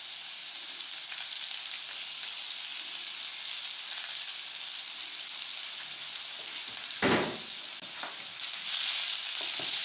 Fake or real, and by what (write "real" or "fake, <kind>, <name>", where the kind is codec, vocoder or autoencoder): real